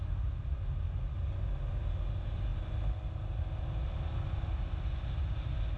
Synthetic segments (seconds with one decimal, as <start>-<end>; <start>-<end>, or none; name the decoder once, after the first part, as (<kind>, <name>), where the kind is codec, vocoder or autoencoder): none